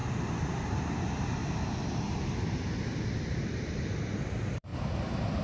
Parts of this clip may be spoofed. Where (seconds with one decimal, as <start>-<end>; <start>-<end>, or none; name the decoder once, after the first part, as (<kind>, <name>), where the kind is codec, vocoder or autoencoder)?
0.0-1.0 (vocoder, BigVGAN v2); 4.7-5.4